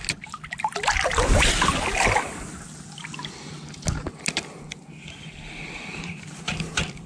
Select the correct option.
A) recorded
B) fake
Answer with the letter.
A